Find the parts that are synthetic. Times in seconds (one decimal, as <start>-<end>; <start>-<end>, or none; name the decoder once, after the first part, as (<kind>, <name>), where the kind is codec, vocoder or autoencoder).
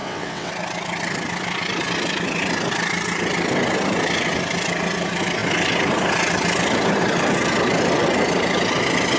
0.0-0.5 (vocoder, WaveNeXt)